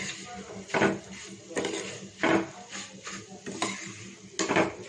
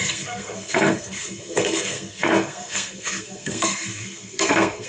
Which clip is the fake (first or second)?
second